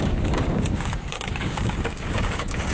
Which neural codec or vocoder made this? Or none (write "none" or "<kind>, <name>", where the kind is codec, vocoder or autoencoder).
codec, DAC